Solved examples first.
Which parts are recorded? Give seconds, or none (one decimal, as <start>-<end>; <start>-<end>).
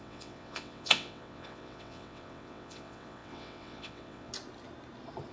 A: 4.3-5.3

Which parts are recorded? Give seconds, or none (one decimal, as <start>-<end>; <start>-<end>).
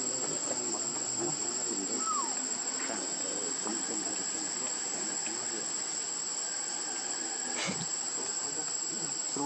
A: 0.0-9.5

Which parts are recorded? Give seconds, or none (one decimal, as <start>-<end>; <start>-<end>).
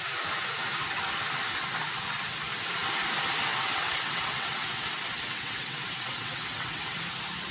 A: 0.0-3.5; 7.0-7.5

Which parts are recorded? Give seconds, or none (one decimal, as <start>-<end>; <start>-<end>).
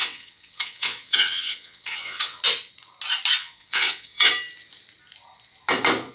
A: 2.4-3.4; 4.3-6.1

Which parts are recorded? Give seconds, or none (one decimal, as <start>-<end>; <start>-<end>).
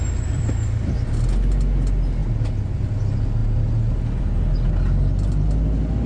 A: 0.0-6.1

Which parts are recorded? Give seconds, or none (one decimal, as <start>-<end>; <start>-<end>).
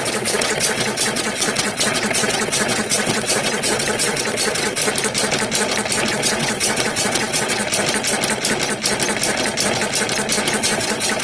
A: 4.8-6.1; 7.6-10.6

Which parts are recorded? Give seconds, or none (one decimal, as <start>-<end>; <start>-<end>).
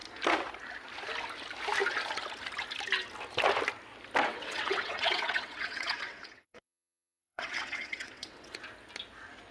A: 0.0-4.3; 8.6-9.5